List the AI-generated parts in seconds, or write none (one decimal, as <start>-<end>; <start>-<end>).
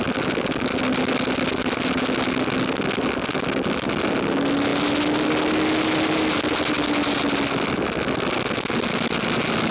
none